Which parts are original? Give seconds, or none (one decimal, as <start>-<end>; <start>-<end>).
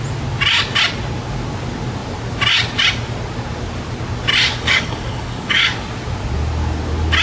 0.0-4.5; 5.8-7.2